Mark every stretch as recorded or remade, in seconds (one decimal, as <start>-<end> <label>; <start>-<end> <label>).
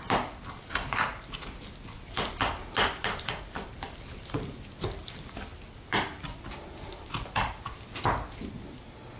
0.0-3.0 recorded; 3.0-4.2 remade; 4.2-5.5 recorded; 5.5-6.5 remade; 6.5-9.2 recorded